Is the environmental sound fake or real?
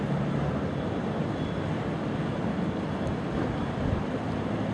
real